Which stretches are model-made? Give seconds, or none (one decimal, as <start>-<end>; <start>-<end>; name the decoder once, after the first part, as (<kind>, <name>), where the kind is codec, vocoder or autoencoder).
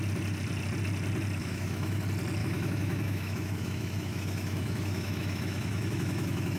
1.4-2.0 (autoencoder, DAC-VAE); 2.4-6.6